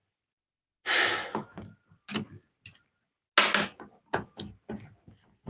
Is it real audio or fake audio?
real